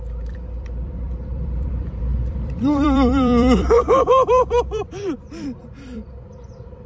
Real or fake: fake